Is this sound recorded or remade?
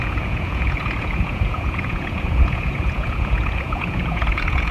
remade